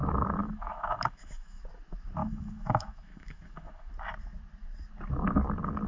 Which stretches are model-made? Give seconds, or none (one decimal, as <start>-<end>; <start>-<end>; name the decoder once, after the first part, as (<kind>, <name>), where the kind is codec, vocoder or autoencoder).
0.4-1.6 (autoencoder, DAC-VAE); 2.2-3.9